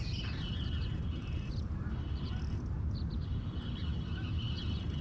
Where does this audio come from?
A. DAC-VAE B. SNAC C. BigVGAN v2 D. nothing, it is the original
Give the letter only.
D